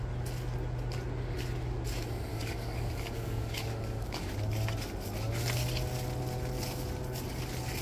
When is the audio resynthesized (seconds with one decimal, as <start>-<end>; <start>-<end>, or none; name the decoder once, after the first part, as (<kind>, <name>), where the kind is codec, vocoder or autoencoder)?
2.3-4.3 (codec, DAC)